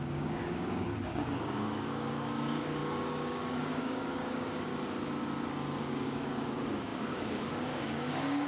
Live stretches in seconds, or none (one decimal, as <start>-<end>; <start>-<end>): 4.7-5.8